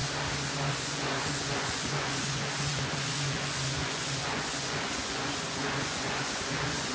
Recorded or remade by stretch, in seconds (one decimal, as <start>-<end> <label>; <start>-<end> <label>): 0.0-0.7 recorded; 0.7-6.9 remade